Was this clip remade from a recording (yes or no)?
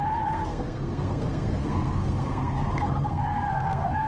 yes